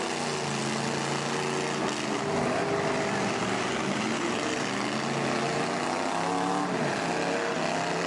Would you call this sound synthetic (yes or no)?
no